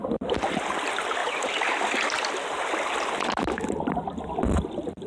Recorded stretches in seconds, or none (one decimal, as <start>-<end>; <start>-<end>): 0.0-5.1